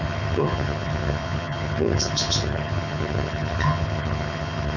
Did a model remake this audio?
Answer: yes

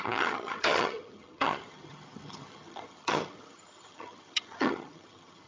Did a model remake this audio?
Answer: yes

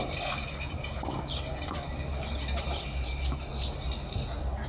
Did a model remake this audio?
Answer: no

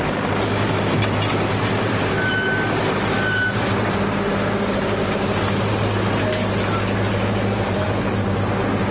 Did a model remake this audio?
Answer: no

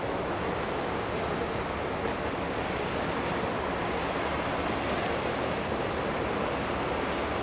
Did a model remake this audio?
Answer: no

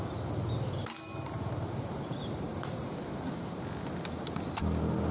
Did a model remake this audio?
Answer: no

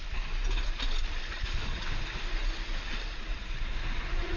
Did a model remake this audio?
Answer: no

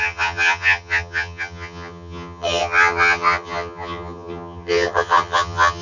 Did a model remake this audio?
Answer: yes